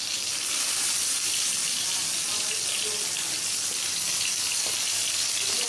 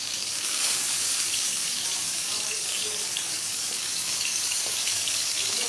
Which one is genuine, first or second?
first